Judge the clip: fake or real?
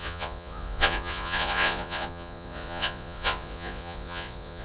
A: fake